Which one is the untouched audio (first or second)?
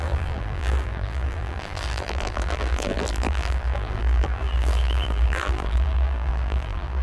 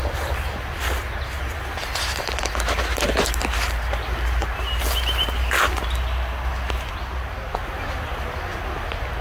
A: second